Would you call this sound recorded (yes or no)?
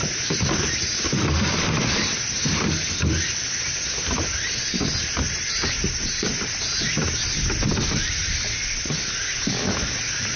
yes